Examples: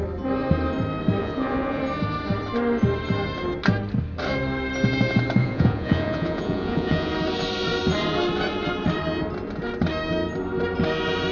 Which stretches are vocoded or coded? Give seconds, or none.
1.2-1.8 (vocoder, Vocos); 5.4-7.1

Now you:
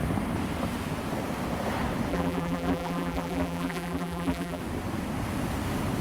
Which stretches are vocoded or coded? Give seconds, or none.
2.1-4.6 (vocoder, BigVGAN v2)